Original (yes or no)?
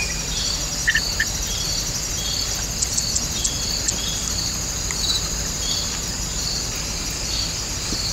yes